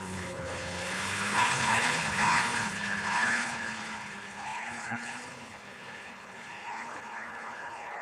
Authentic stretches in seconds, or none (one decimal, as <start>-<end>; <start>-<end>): none